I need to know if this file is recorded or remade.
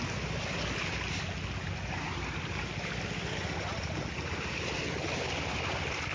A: recorded